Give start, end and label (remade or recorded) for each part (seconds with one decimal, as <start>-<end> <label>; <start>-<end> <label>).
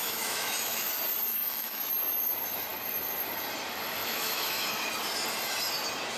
0.0-0.9 remade; 0.9-1.3 recorded; 1.3-1.9 remade; 1.9-4.0 recorded; 4.0-4.7 remade; 4.7-6.2 recorded